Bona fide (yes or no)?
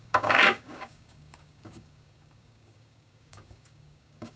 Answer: no